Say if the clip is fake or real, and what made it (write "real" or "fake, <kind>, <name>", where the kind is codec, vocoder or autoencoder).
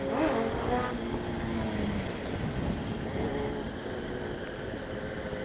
real